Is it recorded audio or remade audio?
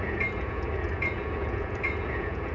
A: remade